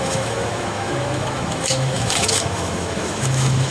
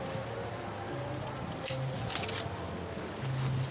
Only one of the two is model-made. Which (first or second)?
first